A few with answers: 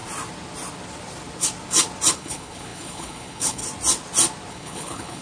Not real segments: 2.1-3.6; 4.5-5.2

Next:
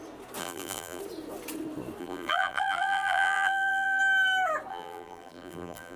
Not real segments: 0.4-1.0; 2.0-4.0; 4.7-6.0

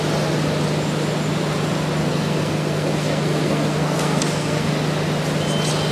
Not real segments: 2.0-4.7

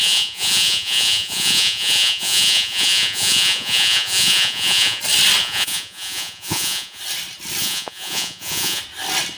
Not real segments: 0.0-5.0; 5.4-7.0; 7.6-8.8

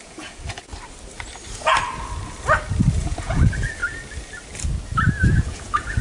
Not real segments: 0.0-0.7; 2.9-3.8; 5.4-6.0

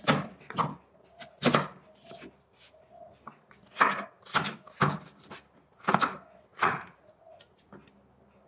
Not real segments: 6.5-7.7